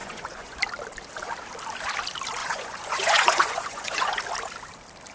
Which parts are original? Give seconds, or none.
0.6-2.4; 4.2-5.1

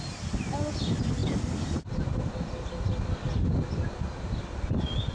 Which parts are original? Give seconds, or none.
0.0-5.1

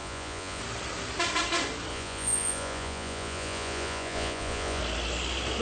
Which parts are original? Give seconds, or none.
0.6-1.9; 4.8-5.6

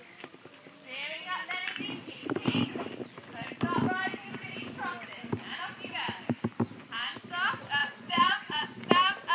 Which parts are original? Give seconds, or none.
0.0-7.8; 8.9-9.3